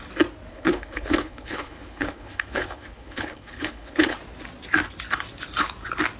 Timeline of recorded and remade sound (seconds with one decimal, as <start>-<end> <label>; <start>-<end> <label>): 0.0-0.5 recorded; 0.5-4.2 remade; 4.2-6.2 recorded